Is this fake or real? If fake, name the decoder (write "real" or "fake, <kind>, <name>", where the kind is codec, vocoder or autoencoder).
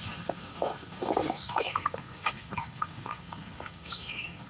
fake, codec, SNAC